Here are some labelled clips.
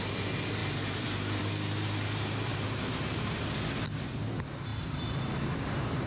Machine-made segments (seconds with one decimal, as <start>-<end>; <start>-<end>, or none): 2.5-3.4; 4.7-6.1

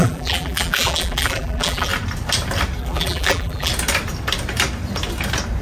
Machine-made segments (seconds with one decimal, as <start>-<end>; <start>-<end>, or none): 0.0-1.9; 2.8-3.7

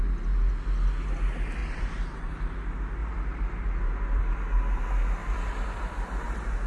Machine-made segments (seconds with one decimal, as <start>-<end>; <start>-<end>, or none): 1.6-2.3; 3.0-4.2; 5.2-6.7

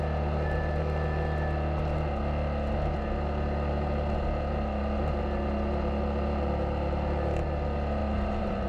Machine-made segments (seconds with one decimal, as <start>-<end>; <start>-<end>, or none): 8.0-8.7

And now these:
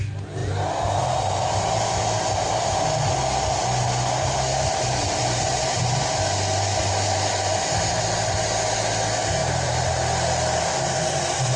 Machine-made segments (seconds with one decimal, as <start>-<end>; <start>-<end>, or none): 4.5-8.0; 9.4-9.9

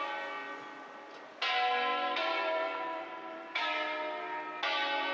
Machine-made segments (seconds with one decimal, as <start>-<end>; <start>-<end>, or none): 1.9-3.6

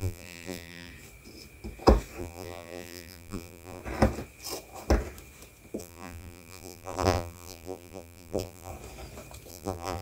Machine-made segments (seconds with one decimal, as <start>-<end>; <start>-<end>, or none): 0.0-0.9; 2.2-3.8; 5.8-8.7; 9.5-10.0